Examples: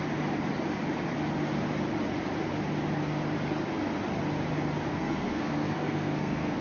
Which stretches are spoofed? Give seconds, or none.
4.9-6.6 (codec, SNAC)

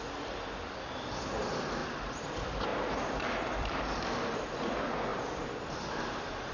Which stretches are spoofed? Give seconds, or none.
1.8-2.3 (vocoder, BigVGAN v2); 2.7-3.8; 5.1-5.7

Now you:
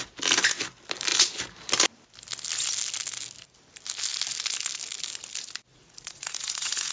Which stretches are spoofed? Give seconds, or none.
5.7-6.9 (vocoder, Vocos)